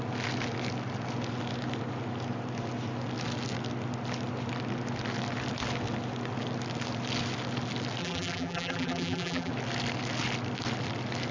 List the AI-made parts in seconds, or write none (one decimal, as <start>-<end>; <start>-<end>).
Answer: 8.0-9.5